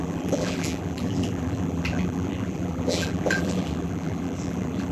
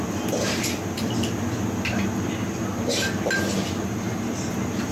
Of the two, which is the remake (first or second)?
first